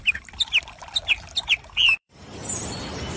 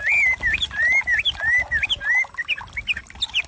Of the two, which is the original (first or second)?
second